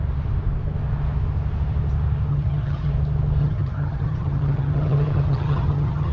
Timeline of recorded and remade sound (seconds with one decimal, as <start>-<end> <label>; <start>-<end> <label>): 0.0-2.3 recorded; 2.3-2.9 remade; 2.9-3.4 recorded; 3.4-6.1 remade